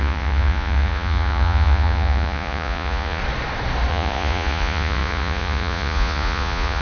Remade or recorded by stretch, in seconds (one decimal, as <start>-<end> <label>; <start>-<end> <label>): 0.0-3.2 remade; 3.2-3.9 recorded; 3.9-6.8 remade